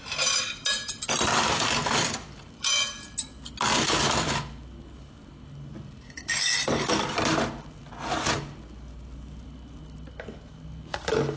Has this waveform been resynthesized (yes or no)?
no